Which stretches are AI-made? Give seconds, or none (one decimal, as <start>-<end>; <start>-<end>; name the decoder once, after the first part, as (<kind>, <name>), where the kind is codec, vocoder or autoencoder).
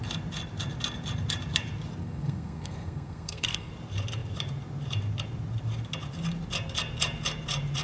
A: 2.0-3.7 (codec, SNAC)